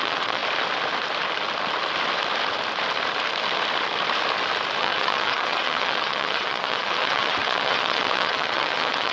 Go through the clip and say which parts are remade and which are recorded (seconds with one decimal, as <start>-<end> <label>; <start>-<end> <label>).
0.0-0.4 remade; 0.4-4.8 recorded; 4.8-9.1 remade